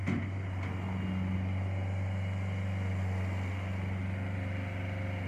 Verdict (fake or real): real